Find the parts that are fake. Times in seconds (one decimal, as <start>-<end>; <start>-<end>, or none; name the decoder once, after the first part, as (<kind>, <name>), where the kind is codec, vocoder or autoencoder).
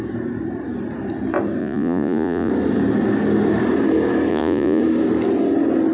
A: 1.6-2.5 (vocoder, Vocos); 4.3-4.8